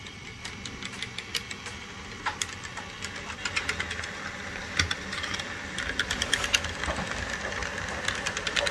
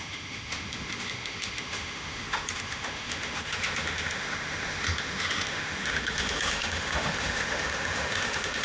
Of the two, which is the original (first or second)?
first